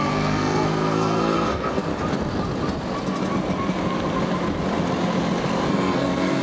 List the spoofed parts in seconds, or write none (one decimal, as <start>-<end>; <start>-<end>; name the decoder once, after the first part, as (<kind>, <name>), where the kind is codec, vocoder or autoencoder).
0.0-1.9 (codec, SNAC); 5.7-6.4